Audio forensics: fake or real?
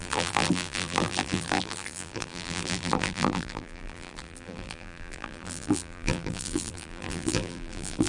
fake